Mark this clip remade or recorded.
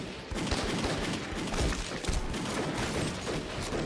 recorded